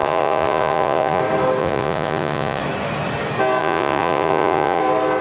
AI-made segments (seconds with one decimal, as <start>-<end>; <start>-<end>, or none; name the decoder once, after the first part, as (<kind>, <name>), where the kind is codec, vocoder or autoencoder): 0.0-1.2 (vocoder, Vocos); 1.6-2.6; 3.6-4.8